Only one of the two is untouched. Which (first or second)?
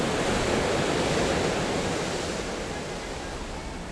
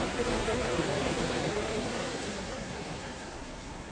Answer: first